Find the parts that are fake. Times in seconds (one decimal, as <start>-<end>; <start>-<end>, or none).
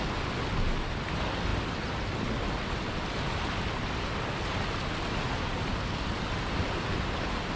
none